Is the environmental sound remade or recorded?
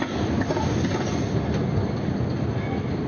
recorded